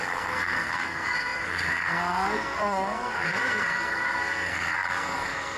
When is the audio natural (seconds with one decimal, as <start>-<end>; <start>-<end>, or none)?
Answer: none